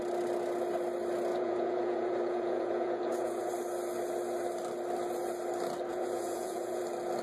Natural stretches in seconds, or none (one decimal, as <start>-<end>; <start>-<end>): 0.0-1.3; 3.5-5.9; 6.8-7.2